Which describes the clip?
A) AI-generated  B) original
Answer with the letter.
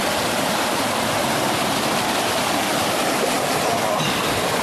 B